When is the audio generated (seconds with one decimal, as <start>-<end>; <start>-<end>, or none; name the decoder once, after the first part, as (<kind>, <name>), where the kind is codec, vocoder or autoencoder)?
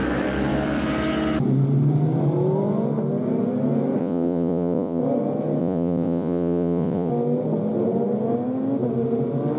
4.0-5.0 (vocoder, Vocos); 5.6-7.1